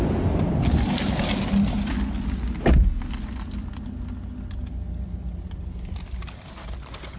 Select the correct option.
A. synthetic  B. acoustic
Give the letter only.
B